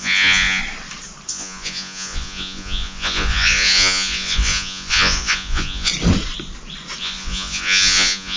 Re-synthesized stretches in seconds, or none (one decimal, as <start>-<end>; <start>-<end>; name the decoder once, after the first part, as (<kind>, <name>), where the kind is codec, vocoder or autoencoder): 0.0-0.6 (vocoder, Vocos); 1.3-5.9; 7.0-8.4